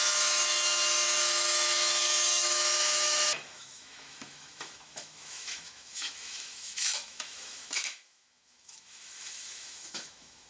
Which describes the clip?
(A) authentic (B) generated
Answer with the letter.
B